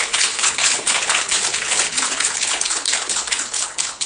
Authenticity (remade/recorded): remade